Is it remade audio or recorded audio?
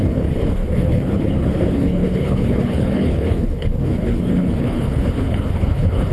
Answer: remade